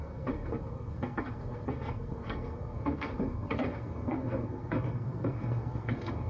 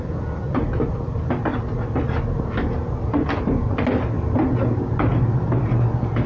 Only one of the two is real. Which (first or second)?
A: second